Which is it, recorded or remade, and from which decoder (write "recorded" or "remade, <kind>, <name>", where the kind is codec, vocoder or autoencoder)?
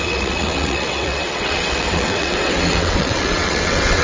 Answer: remade, vocoder, WaveNeXt